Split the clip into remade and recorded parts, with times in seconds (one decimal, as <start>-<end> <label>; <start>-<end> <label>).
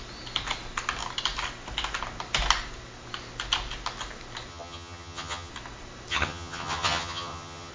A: 0.0-4.5 recorded; 4.5-5.5 remade; 5.5-6.1 recorded; 6.1-7.7 remade